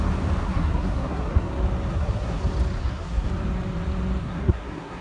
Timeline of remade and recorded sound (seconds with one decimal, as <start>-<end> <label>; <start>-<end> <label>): 0.0-0.4 recorded; 0.4-1.5 remade; 1.5-1.9 recorded; 1.9-2.4 remade; 2.4-2.8 recorded; 2.8-3.3 remade; 3.3-4.2 recorded; 4.2-5.0 remade

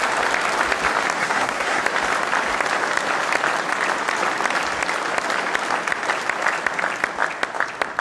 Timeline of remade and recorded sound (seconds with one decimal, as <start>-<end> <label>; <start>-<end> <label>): 0.0-1.2 recorded; 1.2-1.8 remade; 1.8-8.0 recorded

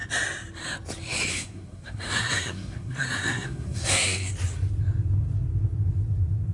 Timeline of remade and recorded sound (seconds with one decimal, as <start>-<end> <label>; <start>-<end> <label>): 0.0-1.3 recorded; 1.3-4.3 remade; 4.3-6.5 recorded

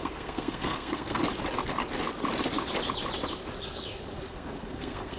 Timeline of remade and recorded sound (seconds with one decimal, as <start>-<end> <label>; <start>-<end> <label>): 0.0-1.2 remade; 1.2-4.3 recorded; 4.3-5.2 remade

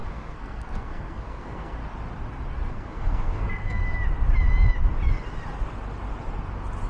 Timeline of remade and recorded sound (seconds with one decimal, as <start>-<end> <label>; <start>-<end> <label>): 0.0-1.8 remade; 1.8-2.7 recorded; 2.7-3.8 remade; 3.8-6.9 recorded

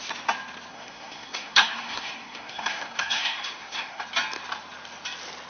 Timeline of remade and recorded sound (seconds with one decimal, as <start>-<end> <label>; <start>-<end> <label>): 0.0-0.7 recorded; 0.7-4.0 remade; 4.0-5.5 recorded

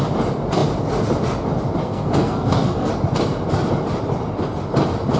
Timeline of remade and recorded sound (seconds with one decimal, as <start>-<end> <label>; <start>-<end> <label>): 0.0-1.8 recorded; 1.8-2.9 remade; 2.9-5.2 recorded